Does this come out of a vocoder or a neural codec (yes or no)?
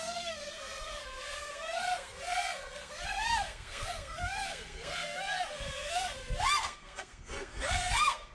yes